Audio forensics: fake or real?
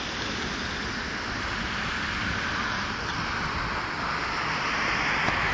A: real